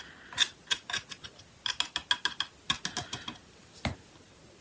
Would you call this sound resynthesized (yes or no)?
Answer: no